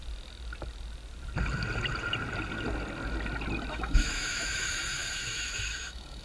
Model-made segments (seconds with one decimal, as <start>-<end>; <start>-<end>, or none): 3.7-6.2